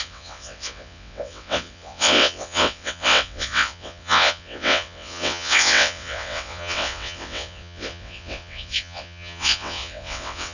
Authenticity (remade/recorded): remade